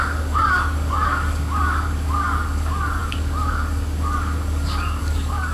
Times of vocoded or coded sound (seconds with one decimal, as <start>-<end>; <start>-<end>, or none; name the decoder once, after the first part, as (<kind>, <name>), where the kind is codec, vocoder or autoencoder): 0.0-5.5 (codec, DAC)